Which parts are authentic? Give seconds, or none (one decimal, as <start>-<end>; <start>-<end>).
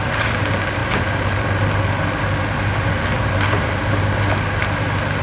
0.0-5.2